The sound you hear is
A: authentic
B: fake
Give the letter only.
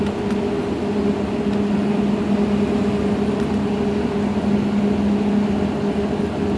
A